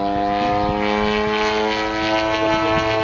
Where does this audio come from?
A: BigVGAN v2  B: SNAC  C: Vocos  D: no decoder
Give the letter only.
D